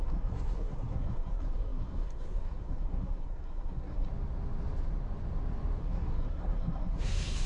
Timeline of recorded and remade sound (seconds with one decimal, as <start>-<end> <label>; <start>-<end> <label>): 0.0-4.1 remade; 4.1-5.8 recorded; 5.8-7.5 remade